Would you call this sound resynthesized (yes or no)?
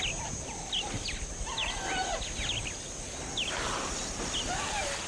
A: no